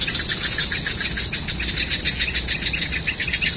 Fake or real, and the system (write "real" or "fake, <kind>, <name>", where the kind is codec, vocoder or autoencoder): real